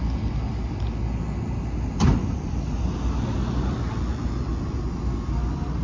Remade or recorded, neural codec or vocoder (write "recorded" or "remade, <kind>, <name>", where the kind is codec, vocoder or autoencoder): recorded